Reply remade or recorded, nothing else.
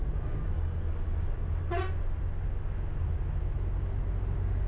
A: recorded